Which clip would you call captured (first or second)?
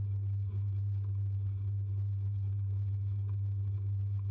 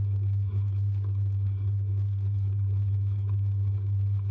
first